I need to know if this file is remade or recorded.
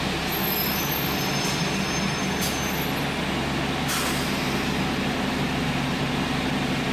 recorded